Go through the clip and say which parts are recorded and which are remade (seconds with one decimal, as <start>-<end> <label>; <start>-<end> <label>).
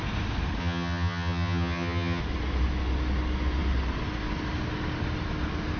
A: 0.0-0.6 recorded; 0.6-2.2 remade; 2.2-5.8 recorded